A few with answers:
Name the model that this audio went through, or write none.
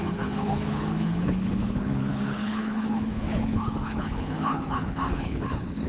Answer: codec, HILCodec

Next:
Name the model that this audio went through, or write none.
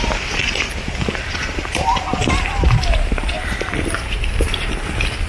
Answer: none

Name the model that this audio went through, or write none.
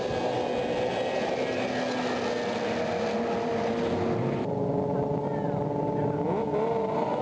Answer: none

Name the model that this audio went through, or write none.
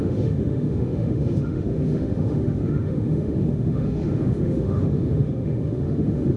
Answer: autoencoder, DAC-VAE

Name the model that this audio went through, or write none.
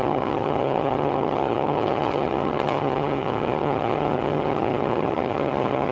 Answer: vocoder, HiFi-GAN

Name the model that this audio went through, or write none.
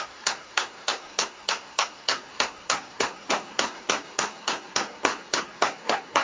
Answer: codec, SNAC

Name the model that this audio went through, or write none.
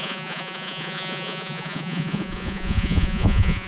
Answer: vocoder, Vocos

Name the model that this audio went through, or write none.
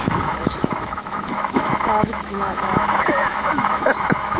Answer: autoencoder, DAC-VAE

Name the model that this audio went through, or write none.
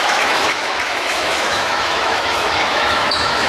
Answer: autoencoder, DAC-VAE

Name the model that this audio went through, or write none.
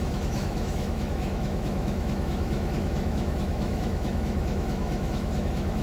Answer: autoencoder, DAC-VAE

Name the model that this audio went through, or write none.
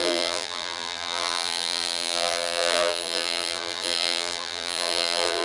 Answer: vocoder, BigVGAN v2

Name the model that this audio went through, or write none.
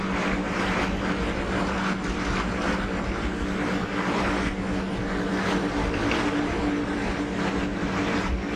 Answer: none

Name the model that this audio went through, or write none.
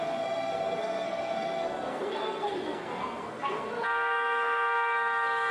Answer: codec, SNAC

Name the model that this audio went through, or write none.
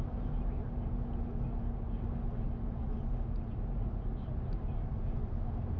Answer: none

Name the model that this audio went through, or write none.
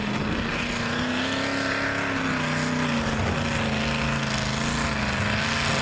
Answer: none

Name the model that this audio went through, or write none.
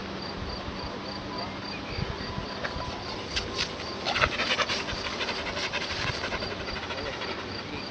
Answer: none